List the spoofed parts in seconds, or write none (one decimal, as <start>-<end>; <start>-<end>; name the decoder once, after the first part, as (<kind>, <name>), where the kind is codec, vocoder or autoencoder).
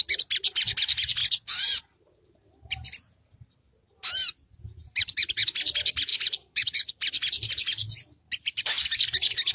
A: 1.2-3.7 (vocoder, BigVGAN v2); 6.1-7.5